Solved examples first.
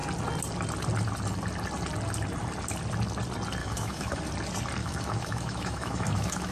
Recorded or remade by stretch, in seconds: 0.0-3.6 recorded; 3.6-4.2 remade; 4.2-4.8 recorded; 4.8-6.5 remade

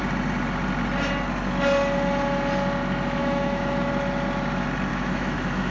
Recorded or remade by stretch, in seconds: 0.0-3.2 recorded; 3.2-3.9 remade; 3.9-4.9 recorded; 4.9-5.7 remade